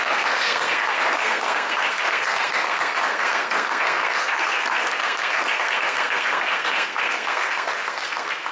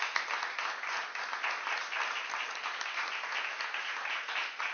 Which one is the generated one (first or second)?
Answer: first